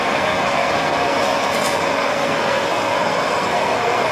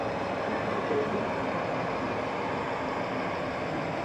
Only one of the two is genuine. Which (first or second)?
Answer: second